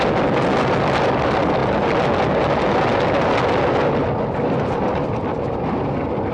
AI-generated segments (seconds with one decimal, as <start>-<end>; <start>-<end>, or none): none